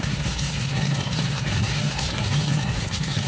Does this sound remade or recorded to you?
remade